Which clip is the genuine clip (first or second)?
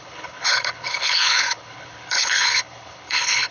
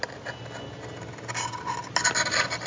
second